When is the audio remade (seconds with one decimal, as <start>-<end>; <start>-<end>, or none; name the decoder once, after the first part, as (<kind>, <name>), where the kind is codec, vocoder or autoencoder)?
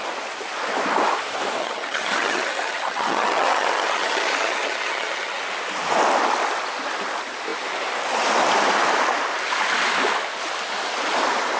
1.6-5.4 (vocoder, HiFi-GAN)